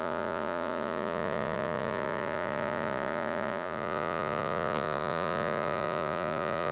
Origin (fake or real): fake